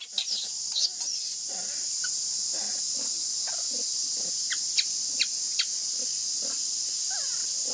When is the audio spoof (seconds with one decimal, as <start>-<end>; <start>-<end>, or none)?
none